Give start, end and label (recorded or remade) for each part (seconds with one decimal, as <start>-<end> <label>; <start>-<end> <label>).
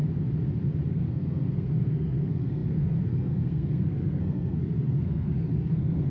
0.0-0.9 recorded; 0.9-6.1 remade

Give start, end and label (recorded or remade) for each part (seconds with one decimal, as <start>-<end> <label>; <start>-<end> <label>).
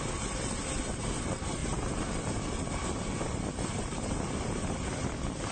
0.0-5.5 recorded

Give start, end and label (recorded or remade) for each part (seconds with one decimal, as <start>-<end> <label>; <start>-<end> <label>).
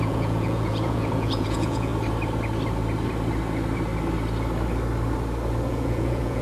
0.0-1.9 remade; 1.9-5.7 recorded; 5.7-6.4 remade